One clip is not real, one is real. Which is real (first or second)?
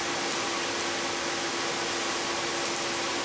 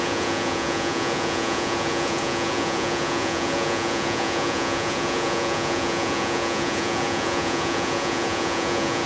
first